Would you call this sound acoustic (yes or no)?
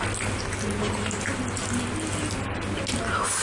yes